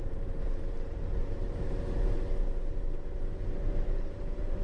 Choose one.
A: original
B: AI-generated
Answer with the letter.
B